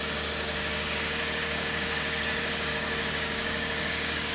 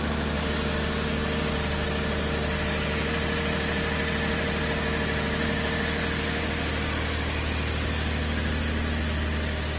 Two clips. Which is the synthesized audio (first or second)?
first